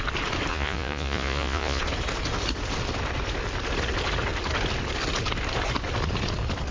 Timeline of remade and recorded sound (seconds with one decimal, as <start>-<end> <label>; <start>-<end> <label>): 0.0-0.5 recorded; 0.5-1.8 remade; 1.8-6.7 recorded

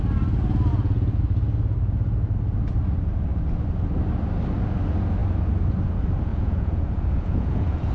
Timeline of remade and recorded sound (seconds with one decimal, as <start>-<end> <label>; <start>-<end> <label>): 0.0-0.7 recorded; 0.7-1.2 remade; 1.2-6.3 recorded; 6.3-7.9 remade

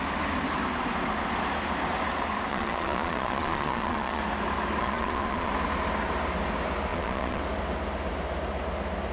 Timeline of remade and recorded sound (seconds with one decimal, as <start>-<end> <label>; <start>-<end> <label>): 0.0-2.5 recorded; 2.5-4.2 remade; 4.2-4.8 recorded; 4.8-5.5 remade; 5.5-6.9 recorded; 6.9-7.4 remade; 7.4-9.1 recorded

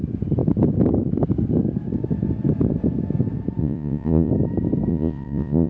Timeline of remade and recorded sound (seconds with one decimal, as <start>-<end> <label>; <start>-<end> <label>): 0.0-3.6 recorded; 3.6-4.3 remade; 4.3-4.9 recorded; 4.9-5.7 remade